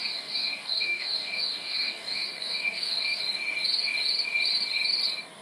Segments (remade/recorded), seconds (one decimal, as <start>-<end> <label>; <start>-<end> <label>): 0.0-3.2 remade; 3.2-5.4 recorded